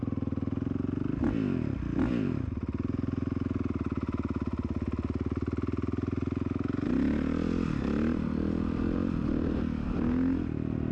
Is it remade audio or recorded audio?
recorded